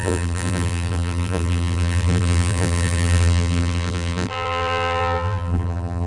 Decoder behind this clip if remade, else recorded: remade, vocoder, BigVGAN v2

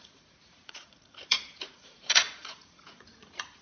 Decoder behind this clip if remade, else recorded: remade, vocoder, Vocos